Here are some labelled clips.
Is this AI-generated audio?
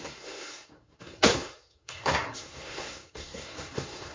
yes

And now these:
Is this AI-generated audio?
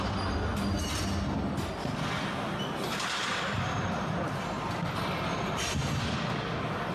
no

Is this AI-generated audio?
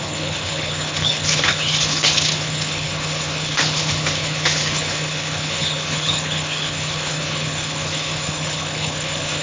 yes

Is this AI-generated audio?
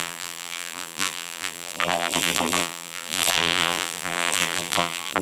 yes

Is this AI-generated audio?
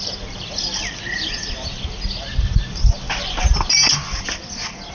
no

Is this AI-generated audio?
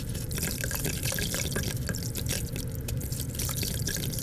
no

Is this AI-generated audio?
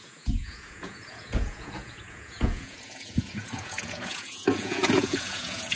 yes